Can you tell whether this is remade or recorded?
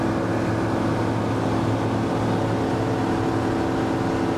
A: recorded